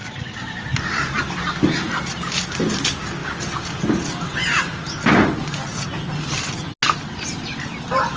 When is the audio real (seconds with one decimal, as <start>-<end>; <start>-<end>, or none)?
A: 1.2-8.2